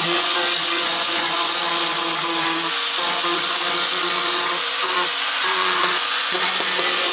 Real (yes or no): no